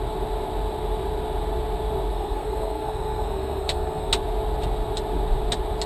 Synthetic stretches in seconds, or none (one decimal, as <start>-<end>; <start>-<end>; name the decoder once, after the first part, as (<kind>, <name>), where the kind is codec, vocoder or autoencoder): 2.1-4.1 (codec, SNAC)